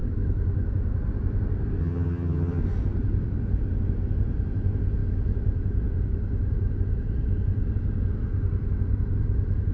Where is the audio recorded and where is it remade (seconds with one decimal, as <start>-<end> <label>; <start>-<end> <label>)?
0.0-1.8 recorded; 1.8-2.6 remade; 2.6-9.7 recorded